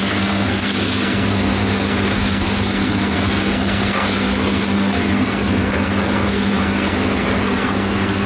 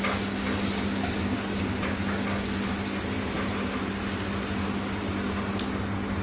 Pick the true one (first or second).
second